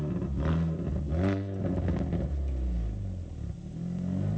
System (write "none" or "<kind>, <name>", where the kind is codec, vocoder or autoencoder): none